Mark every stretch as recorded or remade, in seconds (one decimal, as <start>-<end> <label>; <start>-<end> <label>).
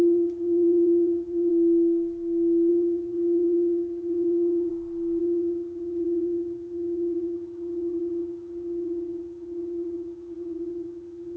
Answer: 0.0-1.5 remade; 1.5-2.7 recorded; 2.7-4.7 remade; 4.7-5.2 recorded; 5.2-11.4 remade